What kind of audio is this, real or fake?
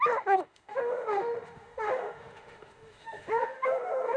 fake